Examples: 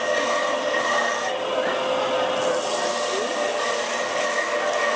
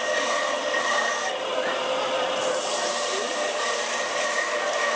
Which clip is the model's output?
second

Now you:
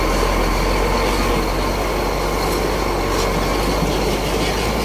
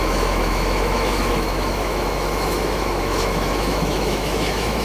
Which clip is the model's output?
second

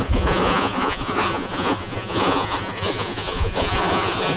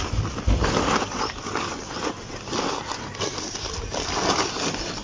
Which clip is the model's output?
first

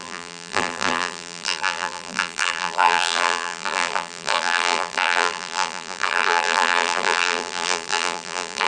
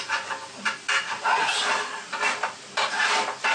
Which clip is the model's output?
first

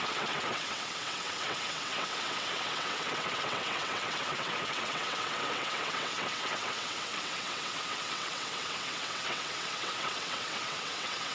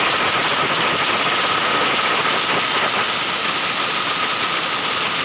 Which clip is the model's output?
first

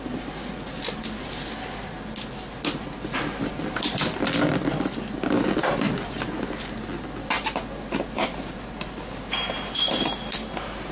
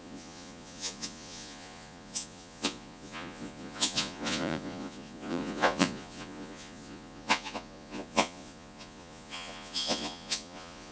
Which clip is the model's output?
second